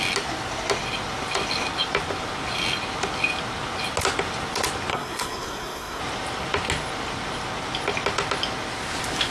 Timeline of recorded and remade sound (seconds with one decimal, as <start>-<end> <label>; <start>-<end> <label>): 0.0-4.9 recorded; 4.9-6.0 remade; 6.0-9.3 recorded